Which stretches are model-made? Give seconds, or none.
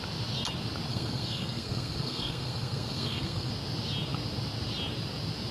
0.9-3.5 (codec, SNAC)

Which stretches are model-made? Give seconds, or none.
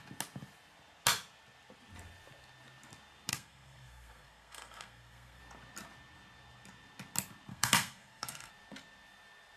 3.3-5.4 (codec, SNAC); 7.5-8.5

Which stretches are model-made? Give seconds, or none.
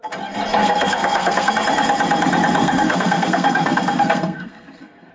0.6-1.5 (codec, SNAC); 2.6-5.1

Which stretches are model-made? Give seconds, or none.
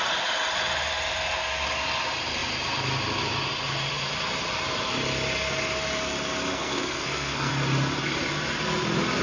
6.5-7.5 (codec, SNAC)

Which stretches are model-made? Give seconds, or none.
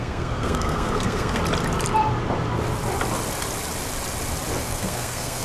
0.0-1.4 (codec, SNAC); 4.6-5.4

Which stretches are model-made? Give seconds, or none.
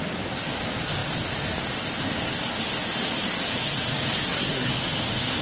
4.2-4.7 (codec, SNAC)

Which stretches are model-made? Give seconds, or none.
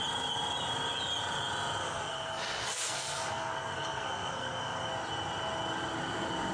1.8-4.9 (codec, SNAC)